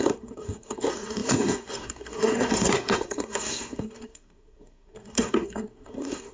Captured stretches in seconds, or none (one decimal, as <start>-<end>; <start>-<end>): none